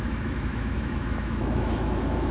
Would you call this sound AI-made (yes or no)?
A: yes